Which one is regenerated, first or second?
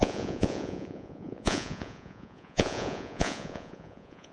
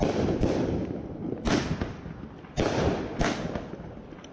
first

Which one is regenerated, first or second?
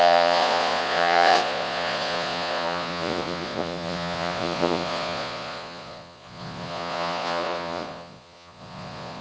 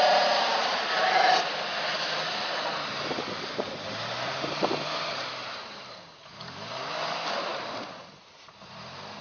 first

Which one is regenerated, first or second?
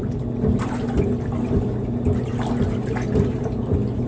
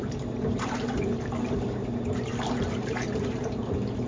second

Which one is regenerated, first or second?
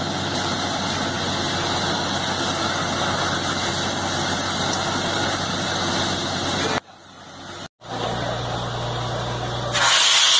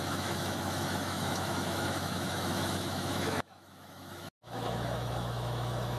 second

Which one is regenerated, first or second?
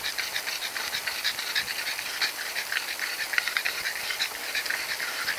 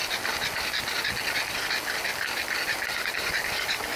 first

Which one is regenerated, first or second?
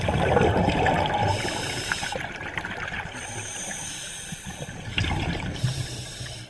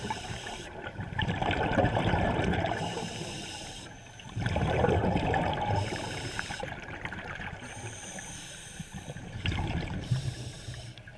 second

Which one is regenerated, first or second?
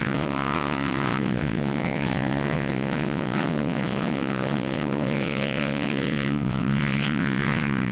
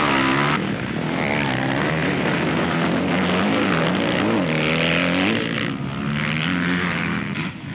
first